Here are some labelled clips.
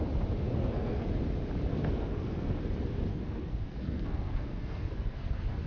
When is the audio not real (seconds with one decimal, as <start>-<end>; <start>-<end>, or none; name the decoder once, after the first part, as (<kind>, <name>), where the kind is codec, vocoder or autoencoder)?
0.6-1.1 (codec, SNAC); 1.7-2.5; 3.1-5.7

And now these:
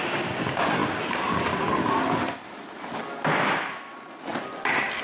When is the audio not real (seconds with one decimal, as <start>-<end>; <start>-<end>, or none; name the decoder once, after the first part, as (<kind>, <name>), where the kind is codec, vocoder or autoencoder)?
none

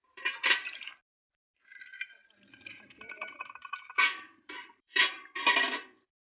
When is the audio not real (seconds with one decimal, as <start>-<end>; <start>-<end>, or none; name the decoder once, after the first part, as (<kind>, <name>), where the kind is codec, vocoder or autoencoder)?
0.0-6.3 (vocoder, BigVGAN v2)

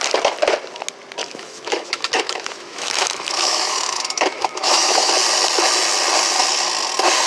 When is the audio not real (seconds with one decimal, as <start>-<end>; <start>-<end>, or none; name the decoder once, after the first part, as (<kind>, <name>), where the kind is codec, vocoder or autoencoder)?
1.2-5.1 (autoencoder, DAC-VAE)

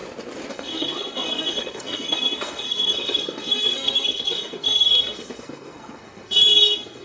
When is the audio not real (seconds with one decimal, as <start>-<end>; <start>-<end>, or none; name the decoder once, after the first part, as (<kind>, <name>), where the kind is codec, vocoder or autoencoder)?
0.5-7.0 (codec, SNAC)

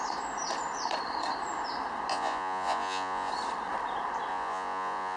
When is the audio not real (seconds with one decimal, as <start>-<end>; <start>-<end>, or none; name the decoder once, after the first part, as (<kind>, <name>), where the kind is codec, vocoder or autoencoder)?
2.1-3.3 (vocoder, Vocos); 4.3-5.2

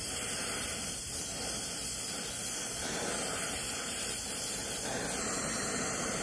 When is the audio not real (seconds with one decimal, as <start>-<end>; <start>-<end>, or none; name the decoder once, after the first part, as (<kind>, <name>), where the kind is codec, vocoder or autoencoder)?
0.0-1.8 (vocoder, BigVGAN v2); 2.7-4.6; 5.2-6.2